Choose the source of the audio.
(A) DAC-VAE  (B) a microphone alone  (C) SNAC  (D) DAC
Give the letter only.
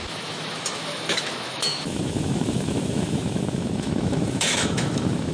A